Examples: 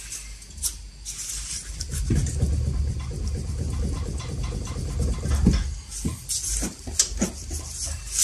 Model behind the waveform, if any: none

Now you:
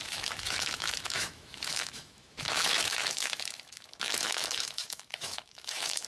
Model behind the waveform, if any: autoencoder, DAC-VAE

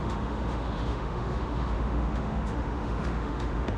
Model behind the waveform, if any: autoencoder, DAC-VAE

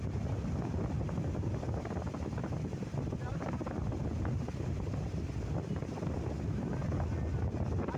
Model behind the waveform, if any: none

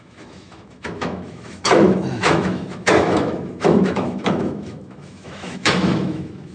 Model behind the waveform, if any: autoencoder, DAC-VAE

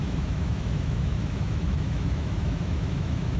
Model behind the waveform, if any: autoencoder, DAC-VAE